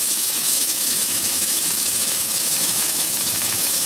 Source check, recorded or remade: remade